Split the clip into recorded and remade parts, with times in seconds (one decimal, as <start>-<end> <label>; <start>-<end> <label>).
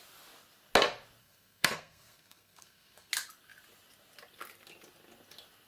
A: 0.0-1.2 recorded; 1.2-3.1 remade; 3.1-5.7 recorded